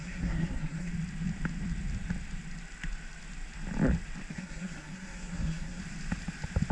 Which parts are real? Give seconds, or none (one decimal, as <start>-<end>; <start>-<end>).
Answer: 0.9-4.3; 5.8-6.7